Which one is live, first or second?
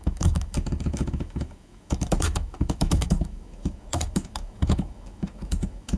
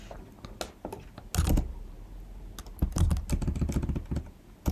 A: second